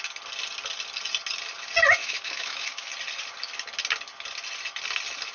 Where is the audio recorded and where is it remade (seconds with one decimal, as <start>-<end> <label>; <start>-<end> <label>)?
0.0-2.0 recorded; 2.0-2.9 remade; 2.9-5.3 recorded